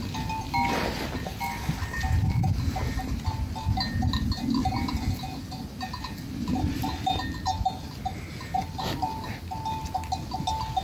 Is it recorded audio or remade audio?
recorded